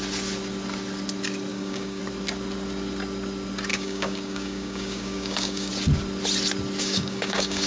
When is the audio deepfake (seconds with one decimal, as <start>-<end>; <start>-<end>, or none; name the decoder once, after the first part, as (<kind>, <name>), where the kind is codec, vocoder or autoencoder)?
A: 1.5-2.0 (codec, DAC); 3.7-5.7; 6.8-7.7